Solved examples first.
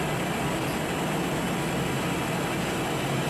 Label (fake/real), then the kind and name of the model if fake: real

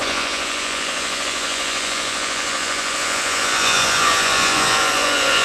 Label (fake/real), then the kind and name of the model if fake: fake, vocoder, Vocos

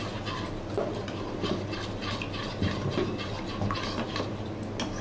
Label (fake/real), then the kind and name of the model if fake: real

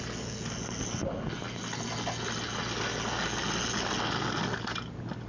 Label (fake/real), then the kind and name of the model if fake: real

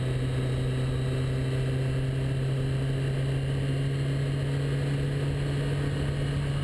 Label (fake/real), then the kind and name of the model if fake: real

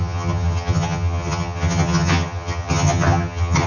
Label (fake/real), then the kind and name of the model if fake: fake, vocoder, HiFi-GAN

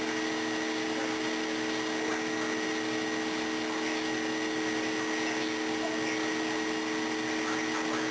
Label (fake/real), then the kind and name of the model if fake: real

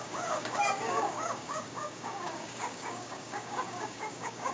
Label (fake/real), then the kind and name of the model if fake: fake, codec, DAC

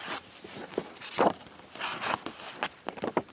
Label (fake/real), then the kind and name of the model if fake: real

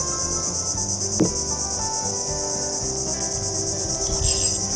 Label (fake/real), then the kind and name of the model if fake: real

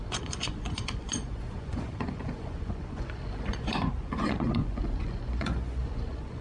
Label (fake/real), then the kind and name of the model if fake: fake, vocoder, Vocos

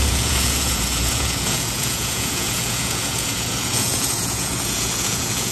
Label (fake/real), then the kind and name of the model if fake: fake, vocoder, Vocos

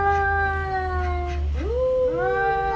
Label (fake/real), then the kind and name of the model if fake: real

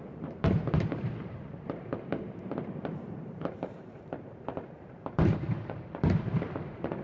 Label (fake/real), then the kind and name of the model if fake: fake, vocoder, BigVGAN v2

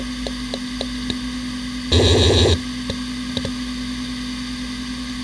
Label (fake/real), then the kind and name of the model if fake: real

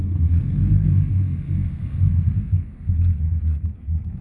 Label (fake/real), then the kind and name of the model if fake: fake, codec, SNAC